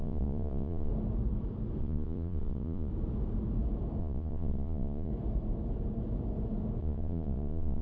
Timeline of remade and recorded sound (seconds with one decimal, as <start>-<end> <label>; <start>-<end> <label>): 0.0-0.9 remade; 0.9-1.8 recorded; 1.8-2.9 remade; 2.9-4.0 recorded; 4.0-5.1 remade; 5.1-6.8 recorded; 6.8-7.8 remade